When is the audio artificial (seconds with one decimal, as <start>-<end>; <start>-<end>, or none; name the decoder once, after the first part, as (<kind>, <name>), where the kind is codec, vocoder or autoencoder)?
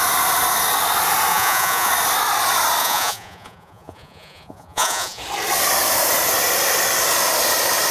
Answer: 1.3-1.9 (vocoder, Vocos); 2.8-5.2